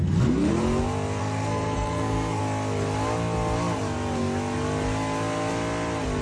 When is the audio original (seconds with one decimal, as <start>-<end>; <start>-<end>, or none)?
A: 0.5-1.2; 2.4-6.2